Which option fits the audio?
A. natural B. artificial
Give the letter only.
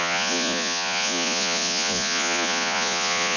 B